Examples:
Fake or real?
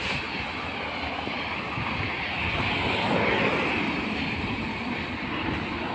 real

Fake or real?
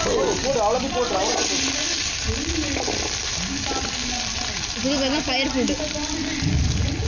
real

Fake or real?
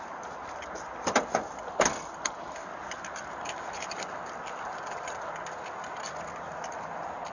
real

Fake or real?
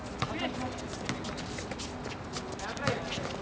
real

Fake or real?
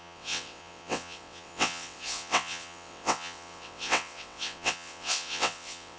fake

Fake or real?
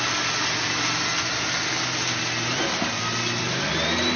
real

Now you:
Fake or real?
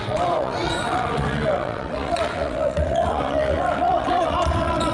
fake